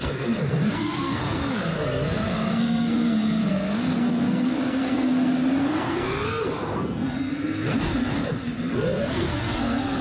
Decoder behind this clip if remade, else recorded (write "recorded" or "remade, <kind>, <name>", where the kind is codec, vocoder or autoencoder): remade, codec, SNAC